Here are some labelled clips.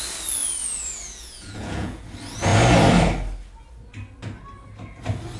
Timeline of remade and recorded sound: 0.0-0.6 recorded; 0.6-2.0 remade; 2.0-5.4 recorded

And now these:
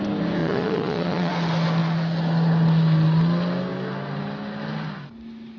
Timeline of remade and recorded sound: 0.0-0.4 recorded; 0.4-1.3 remade; 1.3-5.6 recorded